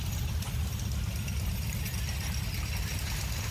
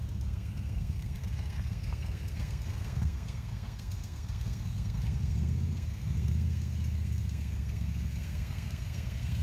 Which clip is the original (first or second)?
first